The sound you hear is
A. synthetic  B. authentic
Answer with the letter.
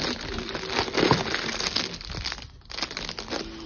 B